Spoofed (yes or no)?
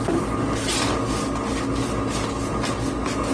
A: no